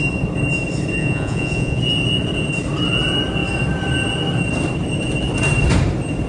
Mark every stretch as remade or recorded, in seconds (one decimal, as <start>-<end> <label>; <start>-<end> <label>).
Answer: 0.0-1.0 recorded; 1.0-1.8 remade; 1.8-6.3 recorded